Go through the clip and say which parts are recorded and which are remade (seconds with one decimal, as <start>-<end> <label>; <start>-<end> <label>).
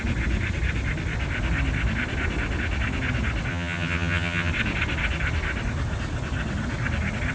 0.0-3.5 recorded; 3.5-4.5 remade; 4.5-7.3 recorded